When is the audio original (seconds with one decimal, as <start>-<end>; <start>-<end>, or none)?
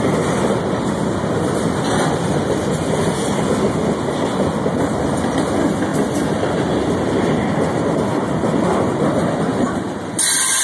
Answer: 0.0-9.5